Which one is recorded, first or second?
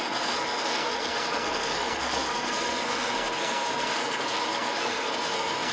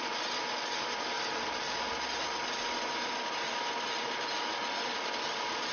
second